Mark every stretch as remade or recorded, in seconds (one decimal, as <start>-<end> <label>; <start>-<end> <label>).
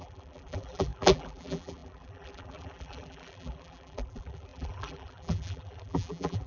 0.0-6.5 remade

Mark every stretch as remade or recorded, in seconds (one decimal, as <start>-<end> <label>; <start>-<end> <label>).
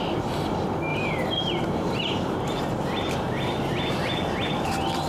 0.0-0.9 recorded; 0.9-4.0 remade; 4.0-5.1 recorded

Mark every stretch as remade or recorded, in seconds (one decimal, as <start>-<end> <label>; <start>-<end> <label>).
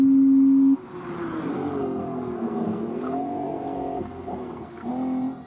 0.0-1.8 recorded; 1.8-4.9 remade; 4.9-5.5 recorded